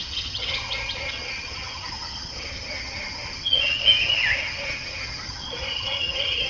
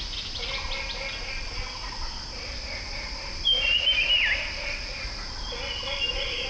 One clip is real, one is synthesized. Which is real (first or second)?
second